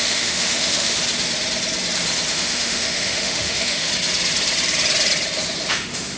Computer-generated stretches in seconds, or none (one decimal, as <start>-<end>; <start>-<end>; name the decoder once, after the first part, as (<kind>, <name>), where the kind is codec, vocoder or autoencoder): 0.0-1.0 (autoencoder, DAC-VAE); 2.3-3.9; 5.7-6.2